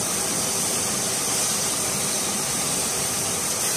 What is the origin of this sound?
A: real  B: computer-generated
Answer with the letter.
A